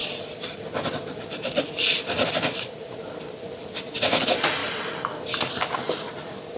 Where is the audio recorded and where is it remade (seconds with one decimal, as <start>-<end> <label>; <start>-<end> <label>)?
0.0-6.6 recorded

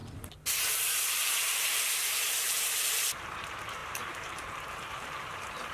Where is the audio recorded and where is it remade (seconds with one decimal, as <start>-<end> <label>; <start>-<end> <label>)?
0.0-0.7 recorded; 0.7-5.7 remade